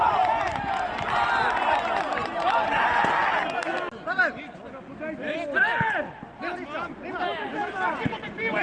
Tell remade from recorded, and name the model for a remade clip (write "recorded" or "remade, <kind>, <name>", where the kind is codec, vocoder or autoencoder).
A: recorded